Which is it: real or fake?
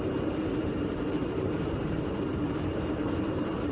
fake